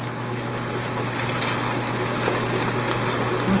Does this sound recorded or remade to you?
recorded